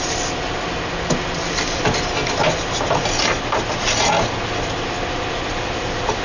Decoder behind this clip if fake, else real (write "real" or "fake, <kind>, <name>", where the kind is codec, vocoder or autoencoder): real